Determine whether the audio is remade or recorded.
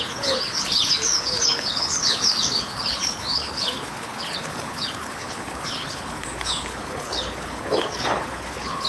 remade